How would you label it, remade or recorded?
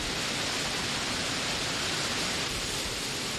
recorded